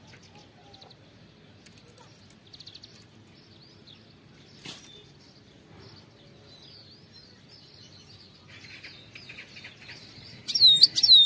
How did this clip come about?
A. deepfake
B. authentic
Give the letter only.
B